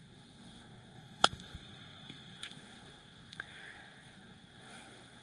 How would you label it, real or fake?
fake